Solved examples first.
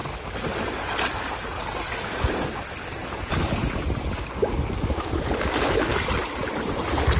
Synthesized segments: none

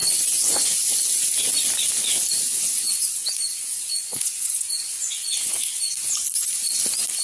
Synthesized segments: 0.0-1.0 (vocoder, Vocos); 2.5-5.9

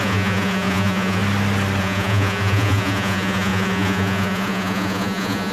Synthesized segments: 0.0-1.2 (vocoder, Vocos); 1.8-5.5

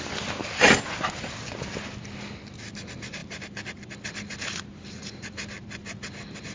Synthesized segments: none